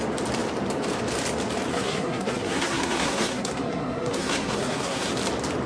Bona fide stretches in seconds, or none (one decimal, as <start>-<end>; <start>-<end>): 0.0-1.7; 5.1-5.7